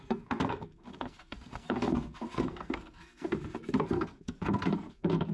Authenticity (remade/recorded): remade